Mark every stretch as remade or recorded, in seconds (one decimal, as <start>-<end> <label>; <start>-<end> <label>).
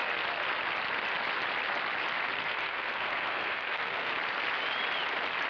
0.0-2.4 recorded; 2.4-4.1 remade; 4.1-5.5 recorded